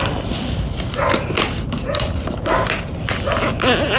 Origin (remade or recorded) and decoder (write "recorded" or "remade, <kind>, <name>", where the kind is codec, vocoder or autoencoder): recorded